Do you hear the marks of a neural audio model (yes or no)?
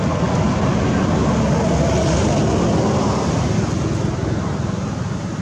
no